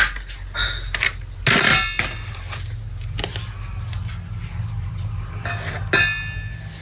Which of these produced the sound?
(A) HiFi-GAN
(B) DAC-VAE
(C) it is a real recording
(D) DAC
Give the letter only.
C